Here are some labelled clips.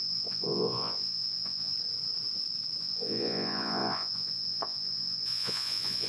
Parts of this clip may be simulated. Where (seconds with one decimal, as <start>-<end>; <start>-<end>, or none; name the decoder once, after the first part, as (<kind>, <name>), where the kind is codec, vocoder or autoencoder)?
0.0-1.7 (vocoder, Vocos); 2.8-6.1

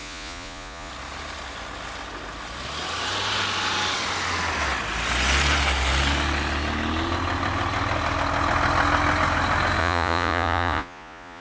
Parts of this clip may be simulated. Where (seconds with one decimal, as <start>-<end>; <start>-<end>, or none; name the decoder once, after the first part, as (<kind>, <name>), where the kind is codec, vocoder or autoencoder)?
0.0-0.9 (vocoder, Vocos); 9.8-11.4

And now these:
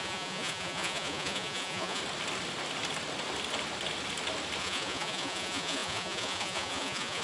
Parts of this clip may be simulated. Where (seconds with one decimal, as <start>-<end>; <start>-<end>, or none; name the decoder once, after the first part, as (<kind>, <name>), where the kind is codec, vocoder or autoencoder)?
0.0-2.0 (vocoder, Vocos); 4.6-7.2

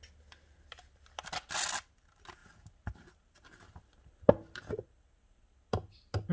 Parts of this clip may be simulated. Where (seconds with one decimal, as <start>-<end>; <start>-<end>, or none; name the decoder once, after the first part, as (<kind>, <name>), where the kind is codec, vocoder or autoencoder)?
none

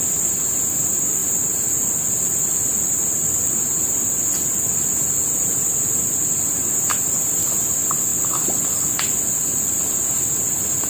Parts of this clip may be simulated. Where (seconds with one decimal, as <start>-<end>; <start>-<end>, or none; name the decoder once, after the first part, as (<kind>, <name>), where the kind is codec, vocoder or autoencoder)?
none

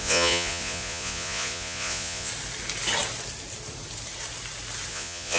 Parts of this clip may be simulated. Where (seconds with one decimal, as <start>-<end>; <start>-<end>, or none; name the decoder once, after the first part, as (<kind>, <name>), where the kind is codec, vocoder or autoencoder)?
0.0-2.3 (vocoder, Vocos); 4.9-5.4